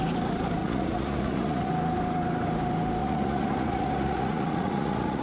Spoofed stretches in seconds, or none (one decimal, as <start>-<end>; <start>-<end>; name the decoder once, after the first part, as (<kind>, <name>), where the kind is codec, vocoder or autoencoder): 0.6-1.7 (vocoder, Vocos); 3.0-5.2

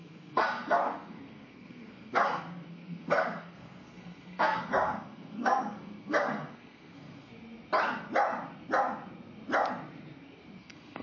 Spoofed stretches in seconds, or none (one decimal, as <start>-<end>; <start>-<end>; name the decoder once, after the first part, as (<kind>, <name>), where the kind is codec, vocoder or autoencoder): 0.0-7.3 (codec, SNAC); 10.6-11.0

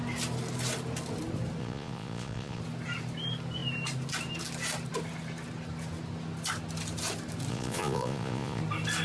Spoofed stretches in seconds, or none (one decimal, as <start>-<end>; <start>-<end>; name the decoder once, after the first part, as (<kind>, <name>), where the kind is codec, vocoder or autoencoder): 1.6-2.6 (vocoder, Vocos); 7.5-8.6

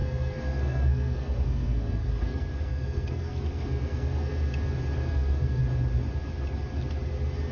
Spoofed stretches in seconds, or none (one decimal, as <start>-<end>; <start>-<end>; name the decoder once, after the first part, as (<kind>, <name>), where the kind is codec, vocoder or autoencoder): 0.0-4.3 (codec, SNAC); 5.0-5.6

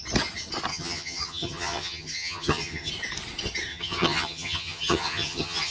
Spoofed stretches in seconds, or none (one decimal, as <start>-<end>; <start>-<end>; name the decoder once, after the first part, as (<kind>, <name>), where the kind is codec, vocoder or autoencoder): 0.7-2.9 (vocoder, HiFi-GAN); 3.7-5.7